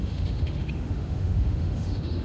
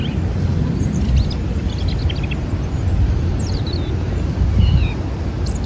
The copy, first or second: first